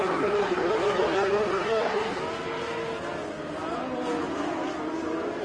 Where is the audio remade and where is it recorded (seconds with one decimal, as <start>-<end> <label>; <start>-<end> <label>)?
0.0-2.2 remade; 2.2-5.4 recorded